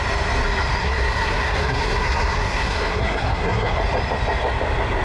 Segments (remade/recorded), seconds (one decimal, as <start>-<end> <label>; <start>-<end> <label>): 0.0-0.8 recorded; 0.8-3.8 remade; 3.8-5.0 recorded